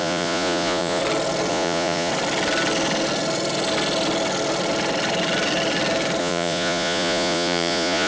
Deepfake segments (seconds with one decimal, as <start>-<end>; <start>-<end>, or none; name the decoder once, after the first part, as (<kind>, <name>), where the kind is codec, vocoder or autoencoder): 0.0-1.0 (vocoder, Vocos); 1.5-2.1; 6.2-8.1